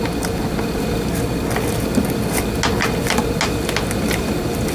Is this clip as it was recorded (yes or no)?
yes